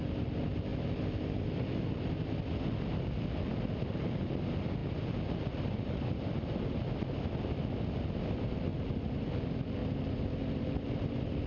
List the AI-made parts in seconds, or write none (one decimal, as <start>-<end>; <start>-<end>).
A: 8.7-9.3; 9.8-11.5